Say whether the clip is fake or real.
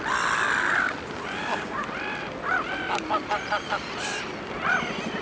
real